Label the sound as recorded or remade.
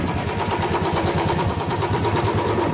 remade